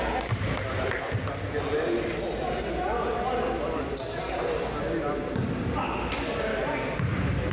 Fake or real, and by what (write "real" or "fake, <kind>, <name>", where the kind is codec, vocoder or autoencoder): real